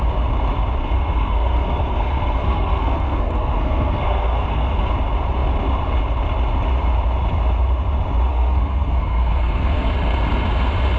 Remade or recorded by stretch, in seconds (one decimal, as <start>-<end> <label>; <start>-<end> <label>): 0.0-0.8 recorded; 0.8-4.9 remade; 4.9-8.3 recorded; 8.3-9.9 remade; 9.9-11.0 recorded